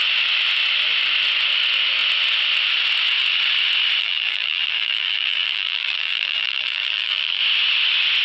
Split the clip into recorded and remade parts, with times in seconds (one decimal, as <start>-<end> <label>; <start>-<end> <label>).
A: 0.0-4.0 recorded; 4.0-7.4 remade; 7.4-8.2 recorded